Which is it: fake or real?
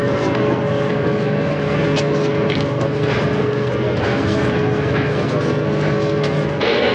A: fake